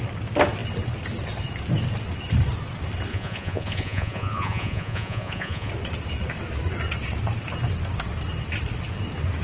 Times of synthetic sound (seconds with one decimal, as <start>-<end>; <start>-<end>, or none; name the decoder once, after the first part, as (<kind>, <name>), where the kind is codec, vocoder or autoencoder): 3.1-5.7 (vocoder, Vocos)